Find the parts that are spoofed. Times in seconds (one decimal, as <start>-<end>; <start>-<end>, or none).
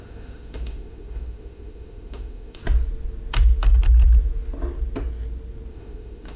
0.0-2.6; 5.7-6.4